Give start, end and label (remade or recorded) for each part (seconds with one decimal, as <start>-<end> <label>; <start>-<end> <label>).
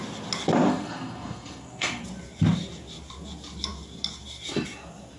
0.0-0.7 recorded; 0.7-2.0 remade; 2.0-5.2 recorded